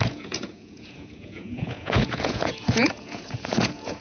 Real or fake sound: fake